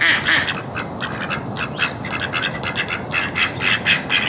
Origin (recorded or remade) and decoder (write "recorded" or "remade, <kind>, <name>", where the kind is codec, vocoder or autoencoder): recorded